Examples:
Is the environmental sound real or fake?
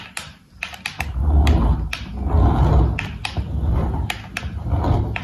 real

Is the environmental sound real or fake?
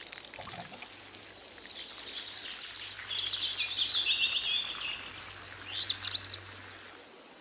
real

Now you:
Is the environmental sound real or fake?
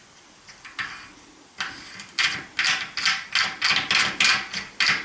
real